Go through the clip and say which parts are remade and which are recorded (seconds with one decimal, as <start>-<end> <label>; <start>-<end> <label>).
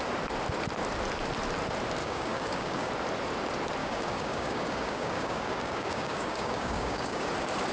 0.0-2.0 recorded; 2.0-2.9 remade; 2.9-3.8 recorded; 3.8-7.3 remade; 7.3-7.7 recorded